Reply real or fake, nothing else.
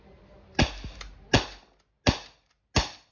real